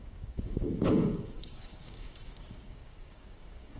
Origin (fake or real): fake